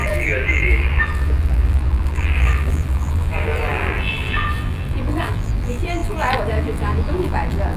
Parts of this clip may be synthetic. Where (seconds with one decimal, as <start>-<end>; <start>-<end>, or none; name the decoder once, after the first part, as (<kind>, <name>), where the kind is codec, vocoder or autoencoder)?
0.0-7.8 (vocoder, BigVGAN v2)